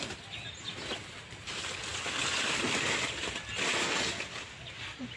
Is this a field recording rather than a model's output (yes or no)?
yes